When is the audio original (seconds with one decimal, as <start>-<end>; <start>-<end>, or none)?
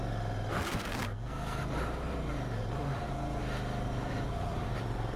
0.0-0.5; 1.6-5.2